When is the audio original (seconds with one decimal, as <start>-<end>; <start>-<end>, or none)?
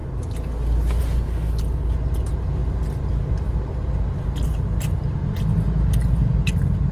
0.0-6.9